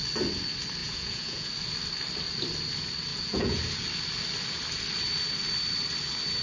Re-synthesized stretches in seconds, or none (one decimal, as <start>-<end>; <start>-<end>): 0.8-1.5; 3.1-3.6